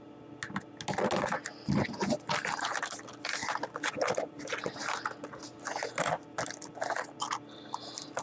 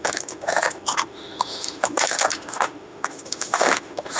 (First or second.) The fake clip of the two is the second